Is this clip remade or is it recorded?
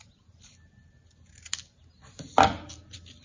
recorded